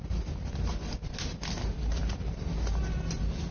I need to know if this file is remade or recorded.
recorded